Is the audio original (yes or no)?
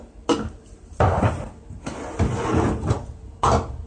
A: yes